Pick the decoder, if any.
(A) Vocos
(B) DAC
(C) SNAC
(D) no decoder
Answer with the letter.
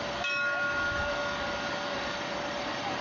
B